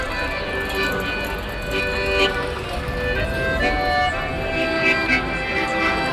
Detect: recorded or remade recorded